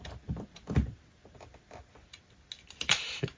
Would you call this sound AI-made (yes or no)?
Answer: no